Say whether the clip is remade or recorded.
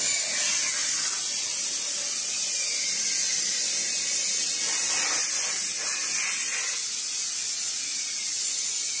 recorded